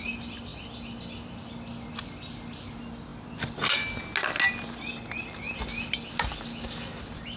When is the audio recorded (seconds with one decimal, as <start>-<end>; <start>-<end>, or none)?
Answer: 0.0-7.4